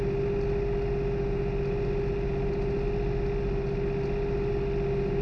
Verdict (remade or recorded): recorded